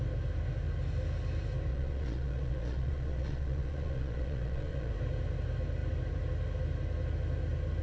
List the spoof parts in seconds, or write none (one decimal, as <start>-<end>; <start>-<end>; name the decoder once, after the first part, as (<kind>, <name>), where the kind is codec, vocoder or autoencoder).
1.7-4.9 (vocoder, Vocos)